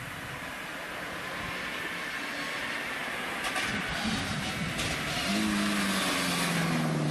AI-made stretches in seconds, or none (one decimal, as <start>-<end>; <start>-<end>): none